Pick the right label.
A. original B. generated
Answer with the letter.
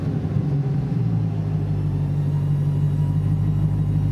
A